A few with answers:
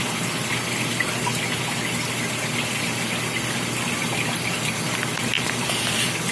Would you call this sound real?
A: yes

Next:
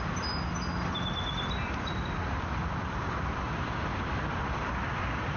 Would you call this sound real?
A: no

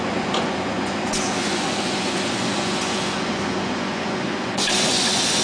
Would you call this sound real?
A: no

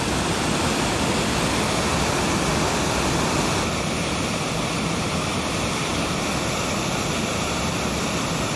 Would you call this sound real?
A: yes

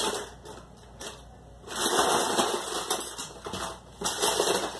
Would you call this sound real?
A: yes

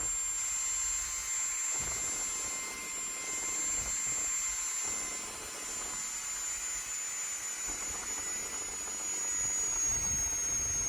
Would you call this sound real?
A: yes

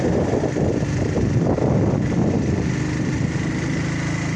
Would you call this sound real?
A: yes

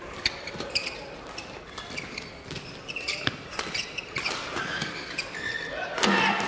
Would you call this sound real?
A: yes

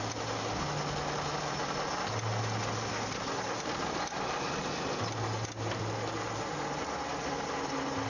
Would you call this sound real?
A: yes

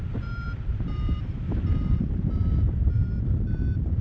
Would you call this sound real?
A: no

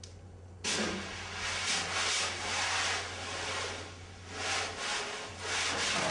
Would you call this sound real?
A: yes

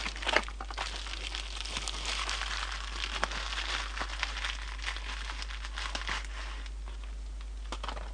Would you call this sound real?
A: yes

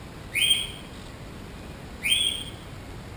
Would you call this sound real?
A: yes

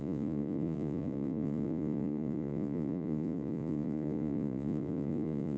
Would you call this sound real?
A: no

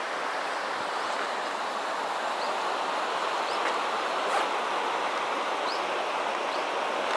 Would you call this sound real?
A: yes